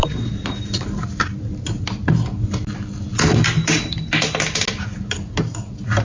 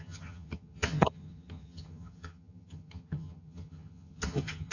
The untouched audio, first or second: first